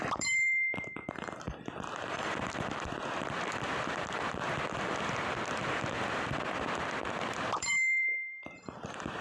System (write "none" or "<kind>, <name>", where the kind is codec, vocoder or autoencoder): vocoder, BigVGAN v2